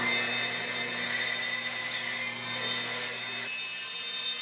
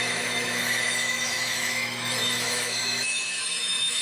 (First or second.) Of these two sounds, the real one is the first